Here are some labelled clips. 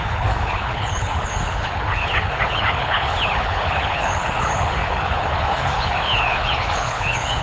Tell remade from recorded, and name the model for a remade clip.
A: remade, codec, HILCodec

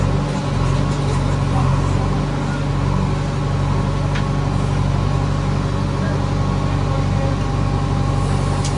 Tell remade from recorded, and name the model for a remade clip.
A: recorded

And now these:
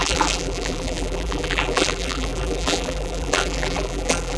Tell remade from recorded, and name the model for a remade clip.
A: remade, vocoder, BigVGAN v2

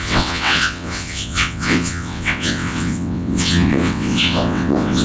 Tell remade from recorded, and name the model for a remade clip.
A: remade, vocoder, WaveNeXt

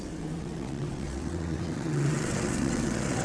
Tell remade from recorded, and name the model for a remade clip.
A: remade, vocoder, WaveNeXt